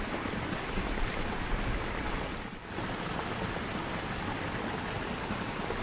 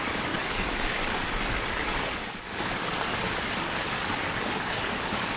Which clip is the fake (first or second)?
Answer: second